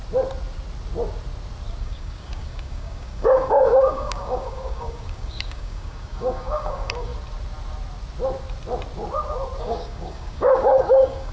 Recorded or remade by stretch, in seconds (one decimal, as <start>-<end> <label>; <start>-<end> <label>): 0.0-1.8 recorded; 1.8-7.1 remade; 7.1-9.6 recorded; 9.6-11.3 remade